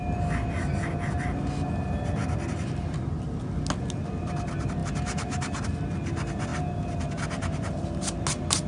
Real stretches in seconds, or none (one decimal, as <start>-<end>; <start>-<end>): 0.0-8.7